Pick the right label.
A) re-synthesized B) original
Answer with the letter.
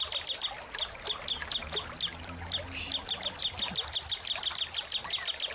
B